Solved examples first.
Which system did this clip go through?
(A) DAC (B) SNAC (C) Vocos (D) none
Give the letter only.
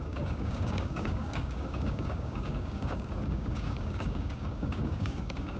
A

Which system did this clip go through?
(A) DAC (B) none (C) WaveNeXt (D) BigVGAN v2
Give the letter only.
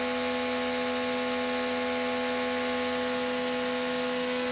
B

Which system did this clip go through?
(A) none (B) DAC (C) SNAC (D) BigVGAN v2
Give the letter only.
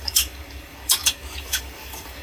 B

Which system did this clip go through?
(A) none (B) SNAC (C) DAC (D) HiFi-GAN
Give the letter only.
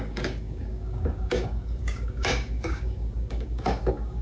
C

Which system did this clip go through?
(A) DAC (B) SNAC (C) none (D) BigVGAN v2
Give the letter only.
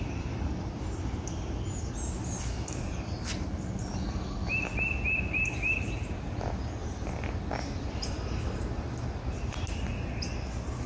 C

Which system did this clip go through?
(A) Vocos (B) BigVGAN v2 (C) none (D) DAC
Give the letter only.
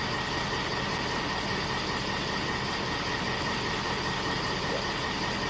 C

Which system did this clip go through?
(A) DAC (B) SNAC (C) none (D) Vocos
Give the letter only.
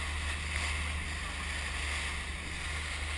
C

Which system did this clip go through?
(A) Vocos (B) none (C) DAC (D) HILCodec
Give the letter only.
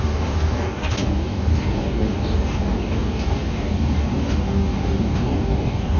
C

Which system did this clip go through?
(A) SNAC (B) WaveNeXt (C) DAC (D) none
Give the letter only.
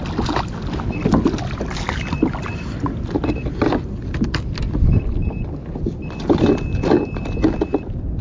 D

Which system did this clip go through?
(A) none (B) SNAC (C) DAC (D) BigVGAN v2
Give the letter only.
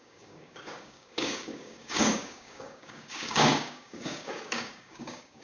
C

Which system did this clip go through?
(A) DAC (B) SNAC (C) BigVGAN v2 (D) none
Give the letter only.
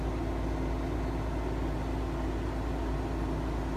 D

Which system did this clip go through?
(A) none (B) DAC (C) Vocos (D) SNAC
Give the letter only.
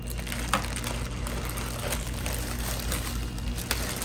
A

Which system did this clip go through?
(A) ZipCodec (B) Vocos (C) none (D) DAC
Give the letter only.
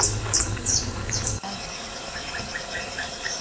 D